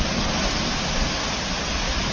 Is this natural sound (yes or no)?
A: yes